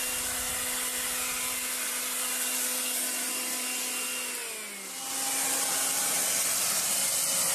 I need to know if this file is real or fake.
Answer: real